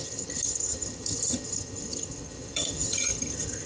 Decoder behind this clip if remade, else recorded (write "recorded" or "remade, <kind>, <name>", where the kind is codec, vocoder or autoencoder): remade, vocoder, HiFi-GAN